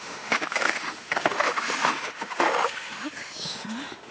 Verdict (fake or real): fake